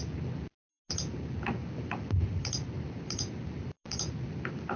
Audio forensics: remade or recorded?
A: recorded